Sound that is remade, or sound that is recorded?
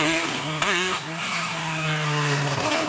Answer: remade